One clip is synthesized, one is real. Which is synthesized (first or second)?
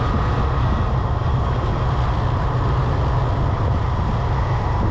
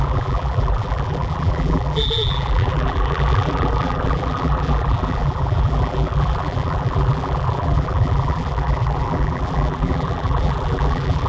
second